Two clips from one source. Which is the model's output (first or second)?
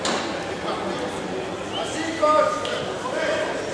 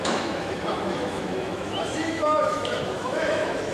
second